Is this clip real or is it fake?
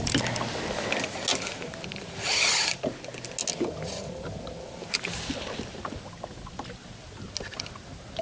real